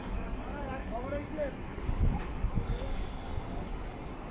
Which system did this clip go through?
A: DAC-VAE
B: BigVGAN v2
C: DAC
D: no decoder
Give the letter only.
C